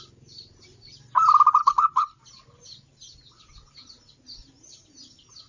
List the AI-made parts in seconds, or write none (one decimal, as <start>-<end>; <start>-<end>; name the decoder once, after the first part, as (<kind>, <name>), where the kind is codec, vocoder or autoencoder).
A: 1.6-2.2 (codec, HILCodec)